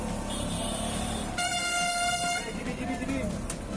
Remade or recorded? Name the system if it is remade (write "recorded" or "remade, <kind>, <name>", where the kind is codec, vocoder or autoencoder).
recorded